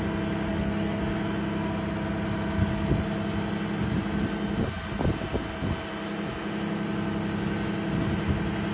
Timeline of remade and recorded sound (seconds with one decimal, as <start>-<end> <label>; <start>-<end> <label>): 0.0-0.5 recorded; 0.5-1.0 remade; 1.0-8.7 recorded